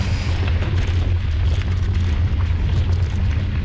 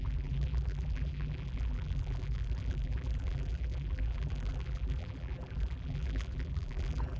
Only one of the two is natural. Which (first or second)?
first